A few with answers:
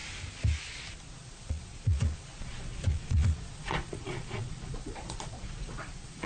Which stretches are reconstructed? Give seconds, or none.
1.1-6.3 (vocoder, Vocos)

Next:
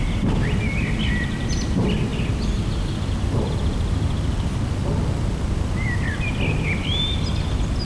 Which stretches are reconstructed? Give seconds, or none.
none

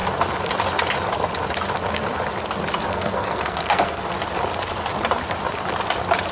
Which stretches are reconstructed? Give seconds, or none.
2.9-4.0 (codec, SNAC)

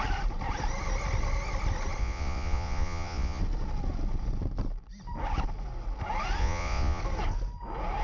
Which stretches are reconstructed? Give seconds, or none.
2.0-3.4 (vocoder, Vocos); 6.4-7.0

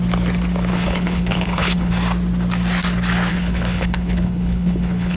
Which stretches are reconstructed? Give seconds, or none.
0.7-1.9 (codec, HILCodec); 3.3-5.2